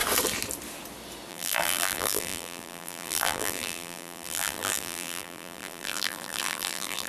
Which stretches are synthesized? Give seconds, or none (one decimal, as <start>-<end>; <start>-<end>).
1.3-7.1